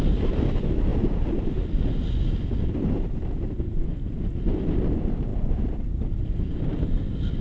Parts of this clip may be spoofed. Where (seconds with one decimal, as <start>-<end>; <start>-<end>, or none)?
0.9-1.5; 5.3-6.6